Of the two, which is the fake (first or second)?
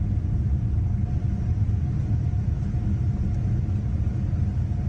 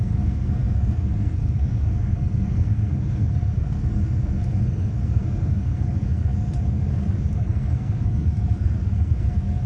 second